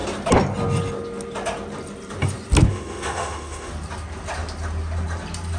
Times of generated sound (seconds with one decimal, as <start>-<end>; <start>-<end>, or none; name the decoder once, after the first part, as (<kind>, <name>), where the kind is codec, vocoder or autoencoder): 2.7-3.7 (autoencoder, DAC-VAE)